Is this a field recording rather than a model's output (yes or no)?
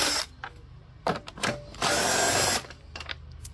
yes